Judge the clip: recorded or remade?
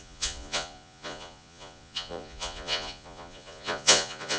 remade